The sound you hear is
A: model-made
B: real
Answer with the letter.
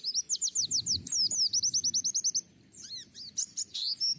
B